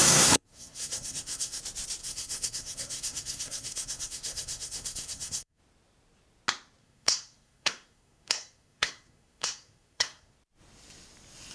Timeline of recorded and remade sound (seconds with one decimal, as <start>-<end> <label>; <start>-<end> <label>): 0.0-1.6 remade; 1.6-2.0 recorded; 2.0-5.6 remade; 5.6-6.8 recorded; 6.8-10.4 remade; 10.4-11.5 recorded